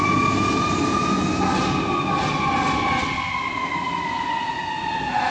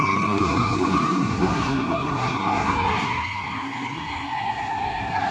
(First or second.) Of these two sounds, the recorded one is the first